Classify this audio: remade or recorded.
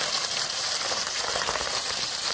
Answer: remade